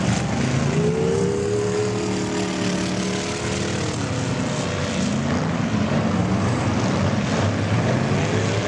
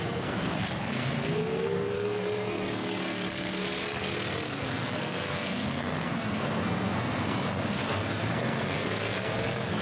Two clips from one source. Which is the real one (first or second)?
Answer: first